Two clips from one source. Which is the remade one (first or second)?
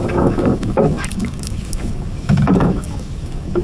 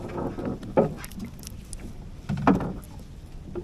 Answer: first